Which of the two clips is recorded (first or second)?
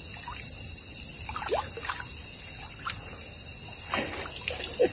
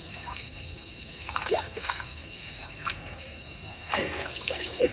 first